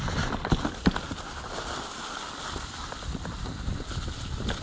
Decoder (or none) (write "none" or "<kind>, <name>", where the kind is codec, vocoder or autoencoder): none